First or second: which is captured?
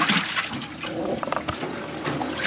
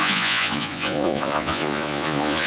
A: first